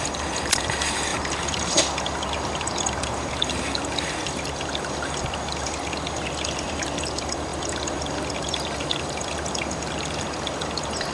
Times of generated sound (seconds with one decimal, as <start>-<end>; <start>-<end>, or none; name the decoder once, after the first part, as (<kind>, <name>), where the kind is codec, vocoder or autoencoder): 0.0-11.1 (vocoder, BigVGAN v2)